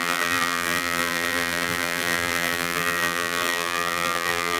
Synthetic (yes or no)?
yes